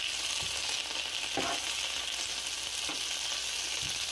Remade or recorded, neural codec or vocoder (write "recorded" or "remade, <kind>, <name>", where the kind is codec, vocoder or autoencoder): recorded